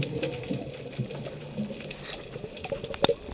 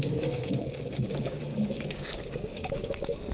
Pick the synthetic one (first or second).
second